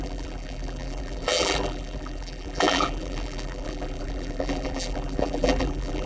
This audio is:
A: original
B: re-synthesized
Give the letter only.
B